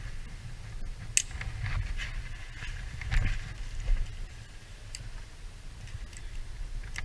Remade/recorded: recorded